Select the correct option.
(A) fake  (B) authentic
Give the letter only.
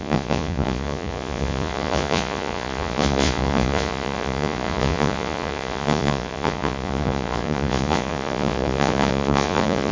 A